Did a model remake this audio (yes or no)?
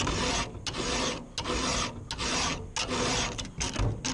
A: no